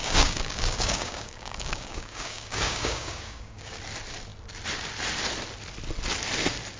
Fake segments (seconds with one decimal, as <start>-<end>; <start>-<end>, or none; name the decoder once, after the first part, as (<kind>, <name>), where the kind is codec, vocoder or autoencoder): 0.0-3.8 (codec, DAC)